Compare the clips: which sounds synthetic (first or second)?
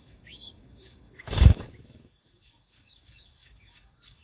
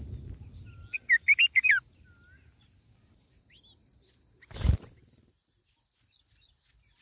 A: first